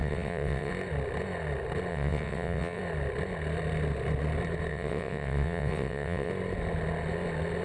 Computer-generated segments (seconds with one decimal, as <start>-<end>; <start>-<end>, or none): 0.0-0.7; 1.9-2.8; 4.7-6.3